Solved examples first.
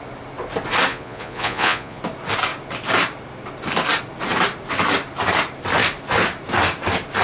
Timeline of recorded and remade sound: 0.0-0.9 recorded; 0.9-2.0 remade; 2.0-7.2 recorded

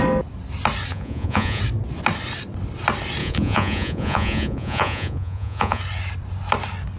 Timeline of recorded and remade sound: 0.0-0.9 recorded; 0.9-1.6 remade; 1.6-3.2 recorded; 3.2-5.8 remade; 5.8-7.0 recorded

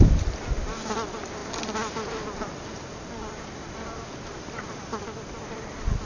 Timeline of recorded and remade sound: 0.0-6.1 recorded

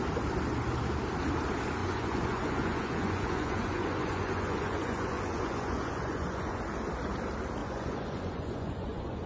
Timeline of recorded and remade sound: 0.0-1.8 recorded; 1.8-6.6 remade; 6.6-7.6 recorded; 7.6-9.3 remade

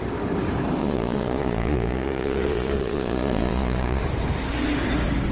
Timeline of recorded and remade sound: 0.0-0.8 recorded; 0.8-4.0 remade; 4.0-5.3 recorded

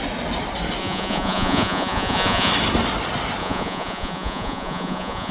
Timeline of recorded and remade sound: 0.0-0.8 recorded; 0.8-2.5 remade; 2.5-3.4 recorded; 3.4-5.3 remade